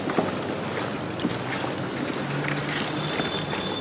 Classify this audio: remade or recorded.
recorded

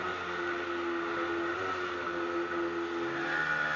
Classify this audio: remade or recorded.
recorded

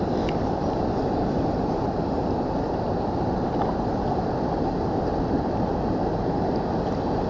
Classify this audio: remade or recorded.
recorded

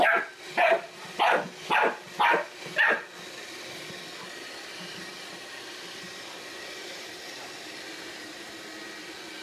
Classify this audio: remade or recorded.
remade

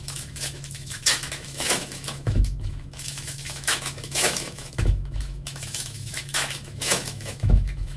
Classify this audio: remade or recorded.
remade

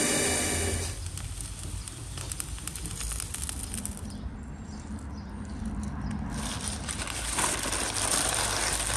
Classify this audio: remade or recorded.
recorded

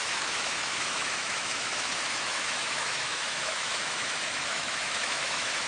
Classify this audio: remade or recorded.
remade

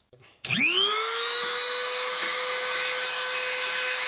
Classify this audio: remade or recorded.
remade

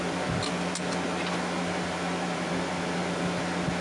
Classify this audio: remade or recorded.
recorded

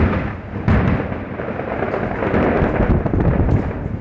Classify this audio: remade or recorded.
recorded